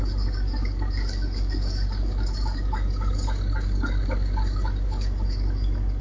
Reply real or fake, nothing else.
fake